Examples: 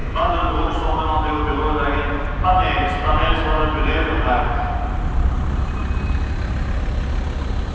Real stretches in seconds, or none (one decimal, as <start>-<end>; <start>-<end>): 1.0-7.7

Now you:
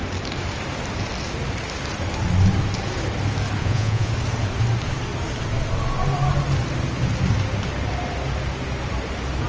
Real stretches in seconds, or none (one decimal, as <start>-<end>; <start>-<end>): 0.0-3.6; 4.1-9.5

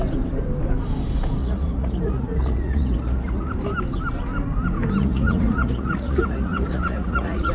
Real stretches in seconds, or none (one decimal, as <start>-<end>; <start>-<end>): 0.0-1.4; 3.5-5.0

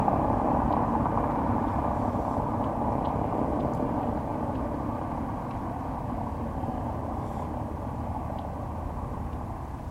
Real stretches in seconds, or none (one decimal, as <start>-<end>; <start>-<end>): 0.0-9.9

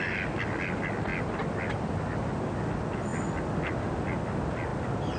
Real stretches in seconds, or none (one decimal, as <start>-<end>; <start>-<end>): 0.0-5.2

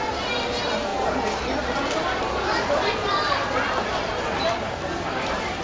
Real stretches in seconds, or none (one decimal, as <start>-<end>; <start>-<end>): 0.0-5.6